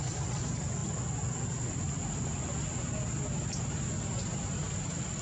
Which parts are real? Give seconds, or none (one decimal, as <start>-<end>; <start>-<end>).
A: 0.0-5.2